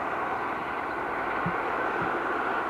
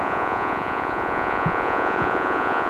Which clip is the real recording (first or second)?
first